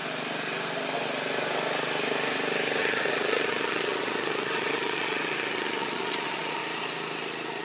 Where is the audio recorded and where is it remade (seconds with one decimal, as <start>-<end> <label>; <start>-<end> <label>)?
0.0-2.8 recorded; 2.8-6.6 remade; 6.6-7.6 recorded